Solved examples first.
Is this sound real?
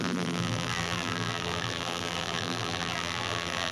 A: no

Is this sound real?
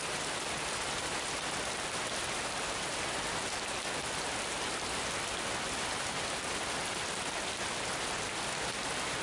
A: yes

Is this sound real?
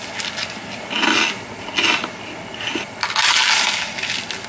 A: yes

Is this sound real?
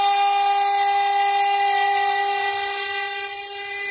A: yes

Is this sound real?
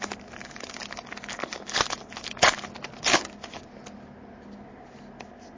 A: yes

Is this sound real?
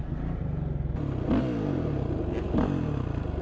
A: yes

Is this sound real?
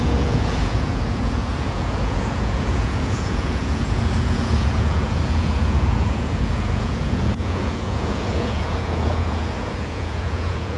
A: no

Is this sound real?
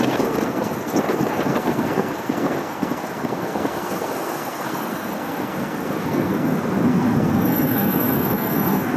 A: no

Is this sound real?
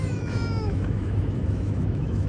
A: no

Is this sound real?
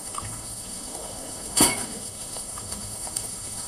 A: no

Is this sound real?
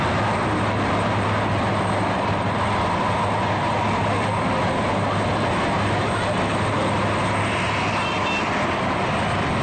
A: yes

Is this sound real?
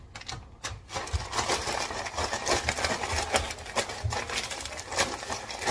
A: yes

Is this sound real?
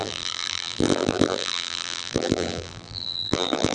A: no